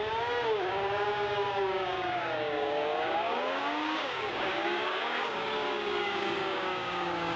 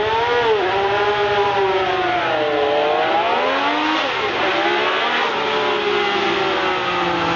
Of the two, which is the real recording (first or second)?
second